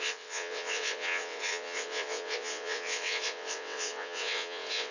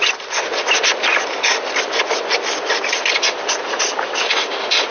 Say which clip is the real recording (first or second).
second